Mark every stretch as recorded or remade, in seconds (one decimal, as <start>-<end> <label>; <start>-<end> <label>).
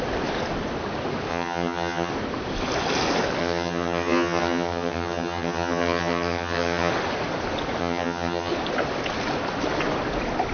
0.0-1.3 recorded; 1.3-2.1 remade; 2.1-3.4 recorded; 3.4-6.9 remade; 6.9-7.8 recorded; 7.8-8.5 remade; 8.5-10.5 recorded